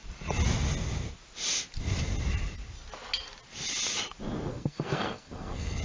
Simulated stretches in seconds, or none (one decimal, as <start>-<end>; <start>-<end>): 4.5-5.8